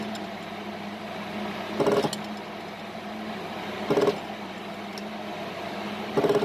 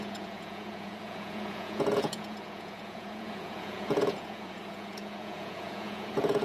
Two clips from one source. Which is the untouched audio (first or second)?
first